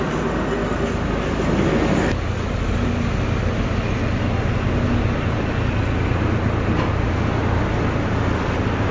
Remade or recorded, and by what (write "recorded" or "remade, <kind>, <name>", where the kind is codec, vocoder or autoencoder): recorded